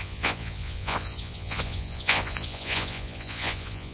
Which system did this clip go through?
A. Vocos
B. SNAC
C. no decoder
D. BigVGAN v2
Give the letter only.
A